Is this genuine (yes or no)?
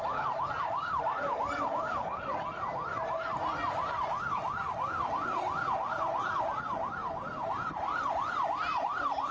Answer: yes